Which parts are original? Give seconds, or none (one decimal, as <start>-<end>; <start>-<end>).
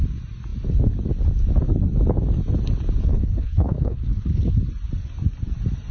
0.0-3.1; 4.5-5.9